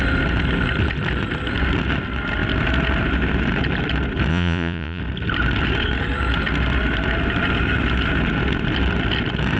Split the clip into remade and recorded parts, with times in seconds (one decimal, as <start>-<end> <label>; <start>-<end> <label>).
0.0-4.3 recorded; 4.3-5.0 remade; 5.0-9.6 recorded